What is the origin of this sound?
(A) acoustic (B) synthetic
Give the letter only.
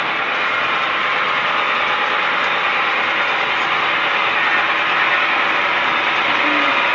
A